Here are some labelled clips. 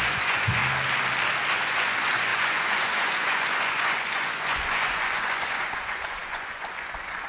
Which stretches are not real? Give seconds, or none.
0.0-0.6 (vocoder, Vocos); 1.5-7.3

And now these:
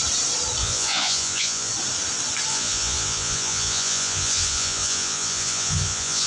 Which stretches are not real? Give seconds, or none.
0.6-1.7 (vocoder, Vocos); 2.5-6.3